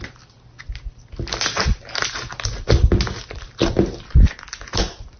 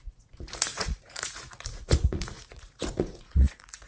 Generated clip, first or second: second